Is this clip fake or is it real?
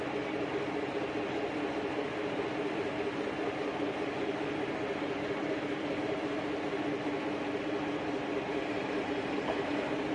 real